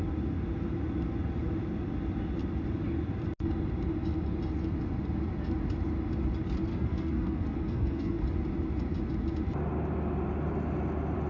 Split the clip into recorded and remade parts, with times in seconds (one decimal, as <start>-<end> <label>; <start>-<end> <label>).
0.0-6.7 recorded; 6.7-8.2 remade; 8.2-11.3 recorded